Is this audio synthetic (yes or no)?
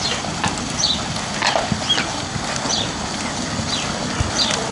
no